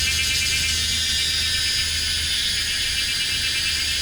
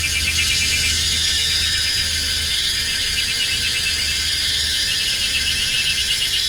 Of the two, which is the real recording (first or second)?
first